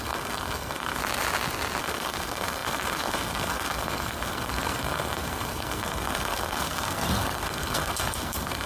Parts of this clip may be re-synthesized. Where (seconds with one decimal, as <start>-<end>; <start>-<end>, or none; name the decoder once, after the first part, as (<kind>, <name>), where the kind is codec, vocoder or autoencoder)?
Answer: 0.0-1.0 (codec, SNAC); 1.8-8.7